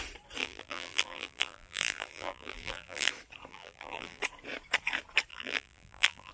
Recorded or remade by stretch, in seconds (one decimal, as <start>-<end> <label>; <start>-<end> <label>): 0.0-0.4 recorded; 0.4-3.1 remade; 3.1-3.5 recorded; 3.5-4.2 remade; 4.2-5.3 recorded; 5.3-6.3 remade